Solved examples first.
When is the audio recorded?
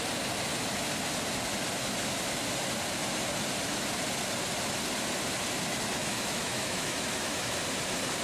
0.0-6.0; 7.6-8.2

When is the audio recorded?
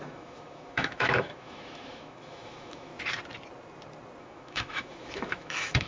2.9-4.2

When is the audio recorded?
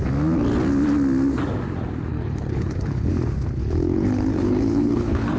0.0-2.1; 3.1-3.6